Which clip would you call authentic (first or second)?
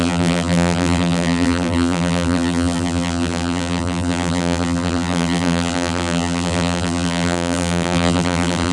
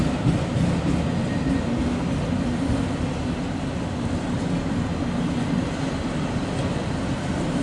second